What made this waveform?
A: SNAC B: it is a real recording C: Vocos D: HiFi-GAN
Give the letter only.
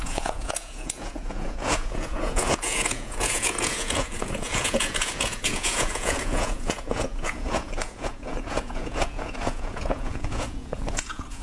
C